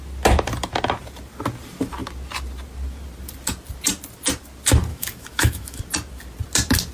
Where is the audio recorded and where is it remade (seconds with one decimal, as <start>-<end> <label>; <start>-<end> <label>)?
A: 0.0-4.9 recorded; 4.9-5.8 remade; 5.8-6.9 recorded